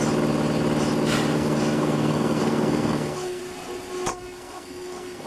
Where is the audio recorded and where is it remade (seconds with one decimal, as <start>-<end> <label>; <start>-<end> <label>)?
0.0-1.3 recorded; 1.3-3.4 remade; 3.4-4.1 recorded; 4.1-5.3 remade